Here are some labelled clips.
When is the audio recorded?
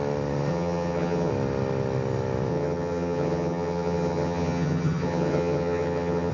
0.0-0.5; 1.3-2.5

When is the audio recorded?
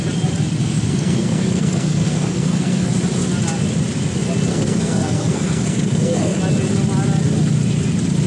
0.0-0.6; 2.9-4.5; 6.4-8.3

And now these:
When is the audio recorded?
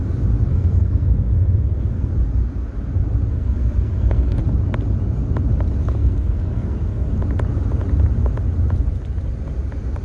0.0-0.5; 2.1-3.3; 4.4-5.8; 7.1-10.0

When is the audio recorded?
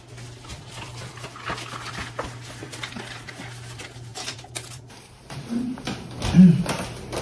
0.0-0.5; 1.1-2.6; 3.3-4.1; 6.1-7.2